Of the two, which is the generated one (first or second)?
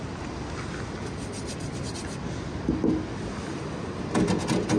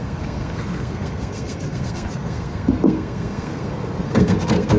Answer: second